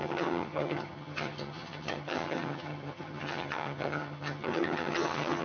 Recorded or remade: remade